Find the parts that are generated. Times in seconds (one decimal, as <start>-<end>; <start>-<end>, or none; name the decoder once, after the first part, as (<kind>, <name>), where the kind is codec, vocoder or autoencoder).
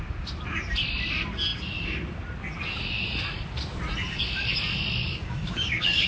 5.0-6.1 (codec, DAC)